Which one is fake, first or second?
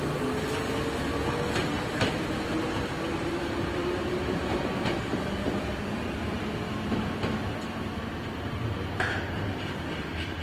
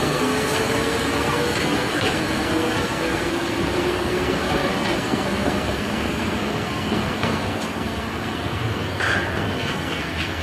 second